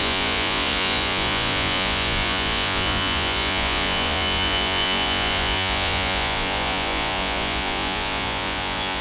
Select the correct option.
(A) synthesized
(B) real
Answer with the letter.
A